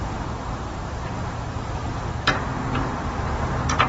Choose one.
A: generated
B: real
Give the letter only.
A